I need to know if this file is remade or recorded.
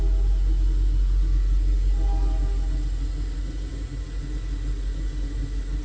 recorded